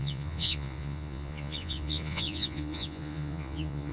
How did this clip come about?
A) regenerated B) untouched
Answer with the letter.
A